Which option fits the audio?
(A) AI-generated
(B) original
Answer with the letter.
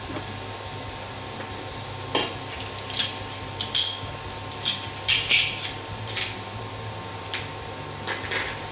B